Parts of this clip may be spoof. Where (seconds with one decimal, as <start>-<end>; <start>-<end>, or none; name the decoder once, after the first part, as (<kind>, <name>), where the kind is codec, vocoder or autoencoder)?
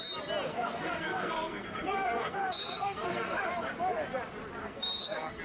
0.5-3.4 (codec, SNAC); 4.6-5.4